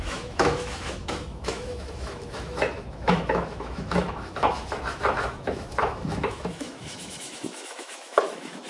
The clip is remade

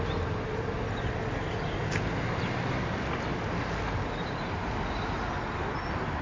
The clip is recorded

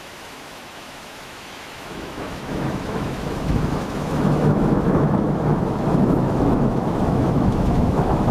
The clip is remade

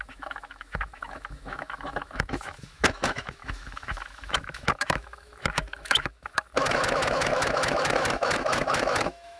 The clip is remade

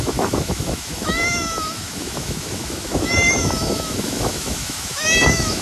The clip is remade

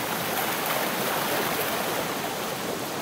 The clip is recorded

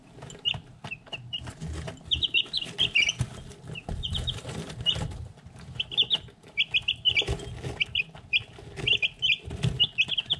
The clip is recorded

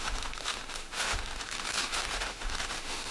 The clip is remade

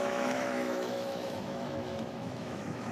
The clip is remade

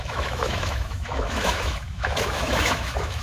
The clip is remade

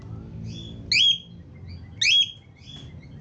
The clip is recorded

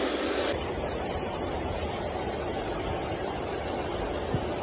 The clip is recorded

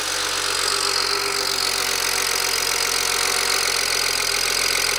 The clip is recorded